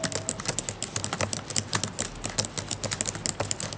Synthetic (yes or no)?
no